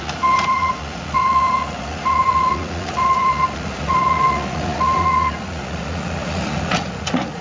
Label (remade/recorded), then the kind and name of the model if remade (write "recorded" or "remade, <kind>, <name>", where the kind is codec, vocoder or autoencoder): remade, vocoder, Vocos